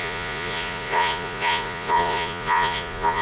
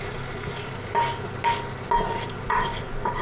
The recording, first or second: second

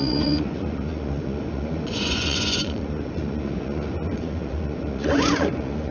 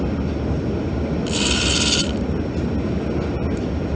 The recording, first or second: second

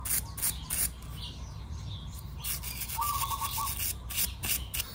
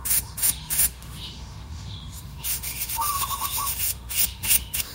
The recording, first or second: first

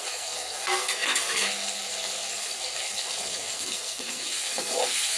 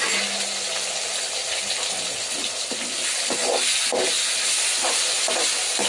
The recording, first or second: second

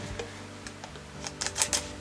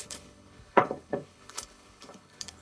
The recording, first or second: first